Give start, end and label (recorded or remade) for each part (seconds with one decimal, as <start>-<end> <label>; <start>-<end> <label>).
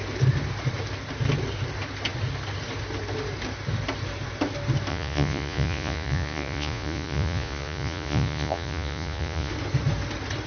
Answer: 0.0-4.9 recorded; 4.9-9.5 remade; 9.5-10.5 recorded